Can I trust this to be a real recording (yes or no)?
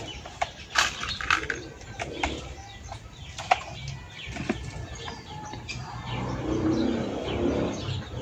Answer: yes